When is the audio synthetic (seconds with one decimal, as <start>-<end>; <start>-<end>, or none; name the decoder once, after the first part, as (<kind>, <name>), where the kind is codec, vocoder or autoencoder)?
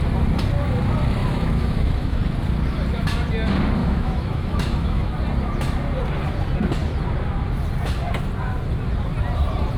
1.2-2.2 (autoencoder, DAC-VAE); 3.8-5.1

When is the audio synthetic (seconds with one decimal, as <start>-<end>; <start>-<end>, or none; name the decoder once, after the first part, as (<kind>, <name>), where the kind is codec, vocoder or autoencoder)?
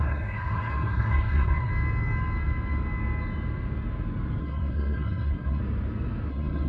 0.0-1.7 (codec, SNAC); 4.4-5.6; 6.3-6.7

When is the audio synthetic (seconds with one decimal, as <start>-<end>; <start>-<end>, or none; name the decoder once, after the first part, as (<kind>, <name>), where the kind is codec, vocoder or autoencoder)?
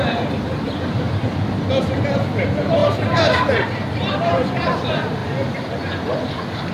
2.8-4.2 (vocoder, BigVGAN v2)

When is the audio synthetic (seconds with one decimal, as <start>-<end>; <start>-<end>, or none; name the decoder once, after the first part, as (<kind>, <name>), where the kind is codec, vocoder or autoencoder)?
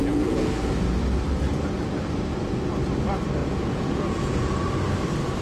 0.0-0.7 (vocoder, Vocos); 3.4-4.6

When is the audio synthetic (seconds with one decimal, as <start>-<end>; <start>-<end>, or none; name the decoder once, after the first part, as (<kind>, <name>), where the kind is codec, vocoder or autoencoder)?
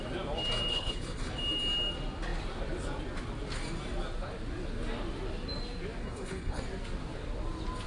0.7-1.3 (codec, HILCodec); 6.0-6.6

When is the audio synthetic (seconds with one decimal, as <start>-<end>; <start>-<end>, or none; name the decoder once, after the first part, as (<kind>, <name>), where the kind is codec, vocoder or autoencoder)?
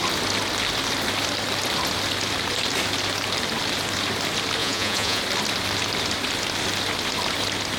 4.6-5.2 (vocoder, Vocos)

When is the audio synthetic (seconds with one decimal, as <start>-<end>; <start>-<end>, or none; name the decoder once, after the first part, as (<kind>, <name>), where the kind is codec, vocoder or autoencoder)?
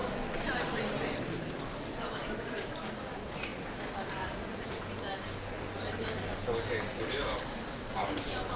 0.0-2.9 (vocoder, BigVGAN v2)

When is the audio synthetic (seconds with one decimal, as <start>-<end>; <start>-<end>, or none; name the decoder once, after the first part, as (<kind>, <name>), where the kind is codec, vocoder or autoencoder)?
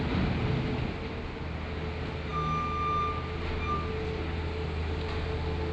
none